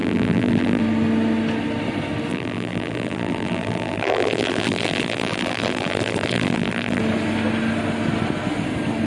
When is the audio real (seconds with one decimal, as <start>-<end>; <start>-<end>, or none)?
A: 0.8-2.3; 7.0-9.1